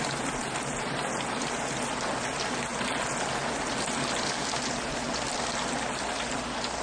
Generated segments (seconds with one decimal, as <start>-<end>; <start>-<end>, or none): none